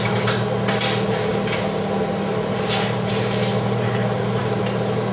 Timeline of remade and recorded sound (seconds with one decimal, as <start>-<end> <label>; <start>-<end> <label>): 0.0-5.1 recorded